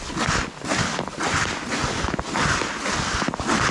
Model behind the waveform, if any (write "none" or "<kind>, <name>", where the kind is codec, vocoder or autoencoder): none